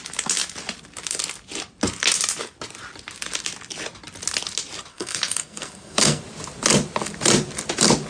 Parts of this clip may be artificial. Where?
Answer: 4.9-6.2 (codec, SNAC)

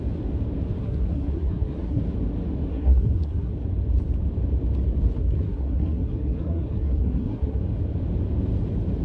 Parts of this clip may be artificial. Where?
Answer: 0.8-2.0 (codec, SNAC); 2.7-3.5; 5.2-7.6

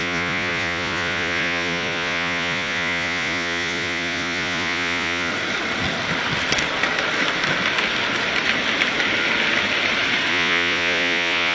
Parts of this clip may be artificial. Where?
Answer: 0.0-5.3 (vocoder, Vocos); 10.3-11.5

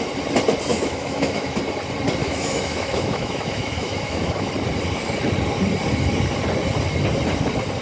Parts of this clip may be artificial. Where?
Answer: 0.7-1.6 (autoencoder, DAC-VAE); 2.2-4.5

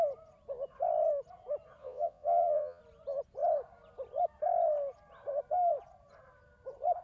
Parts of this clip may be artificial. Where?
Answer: 1.8-2.8 (vocoder, Vocos)

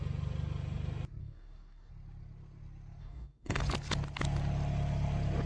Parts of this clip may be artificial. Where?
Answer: 1.2-1.9 (codec, DAC); 3.0-3.6

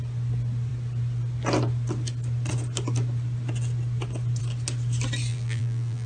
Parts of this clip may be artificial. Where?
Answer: 5.3-6.1 (vocoder, BigVGAN v2)